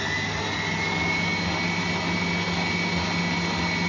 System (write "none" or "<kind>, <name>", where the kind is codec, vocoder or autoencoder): none